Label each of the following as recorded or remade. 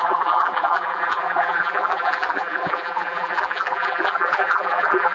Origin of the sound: remade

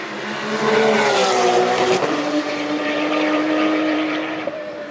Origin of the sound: remade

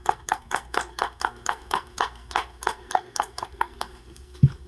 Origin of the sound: remade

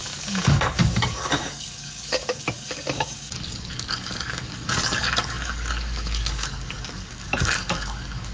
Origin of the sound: remade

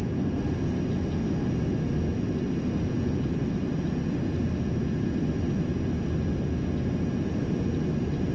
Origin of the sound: recorded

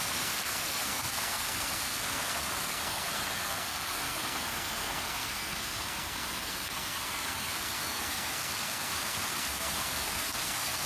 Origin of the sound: remade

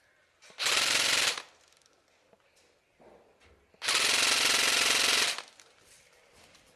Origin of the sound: remade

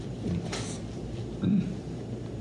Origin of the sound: recorded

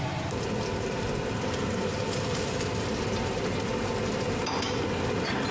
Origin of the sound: recorded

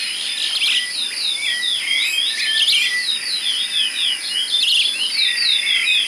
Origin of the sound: recorded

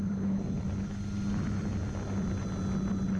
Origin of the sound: recorded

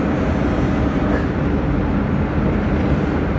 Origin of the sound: recorded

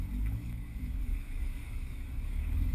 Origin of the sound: remade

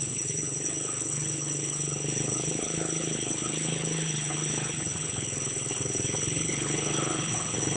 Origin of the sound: remade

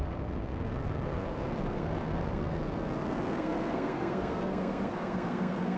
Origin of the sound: remade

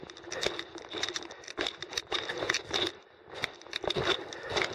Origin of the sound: recorded